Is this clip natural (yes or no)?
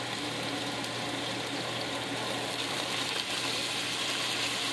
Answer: yes